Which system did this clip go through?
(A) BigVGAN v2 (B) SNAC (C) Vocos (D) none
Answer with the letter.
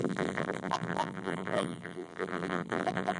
A